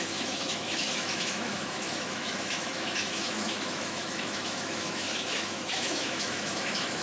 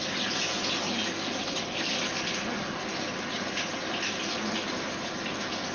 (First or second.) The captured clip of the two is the second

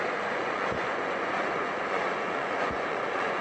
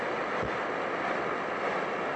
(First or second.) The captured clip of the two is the second